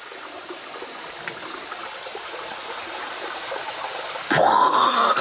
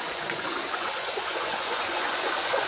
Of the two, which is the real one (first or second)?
first